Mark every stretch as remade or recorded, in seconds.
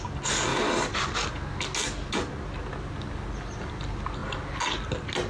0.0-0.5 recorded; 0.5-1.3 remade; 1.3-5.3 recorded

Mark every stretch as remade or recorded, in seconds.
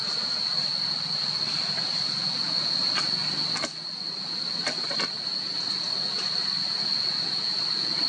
0.0-8.1 recorded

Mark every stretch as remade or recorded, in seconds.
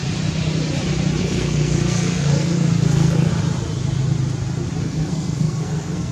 0.0-1.2 recorded; 1.2-3.3 remade; 3.3-4.8 recorded; 4.8-6.1 remade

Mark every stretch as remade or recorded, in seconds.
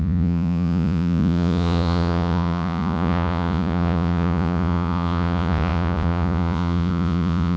0.0-7.6 remade